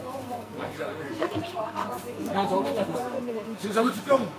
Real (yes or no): no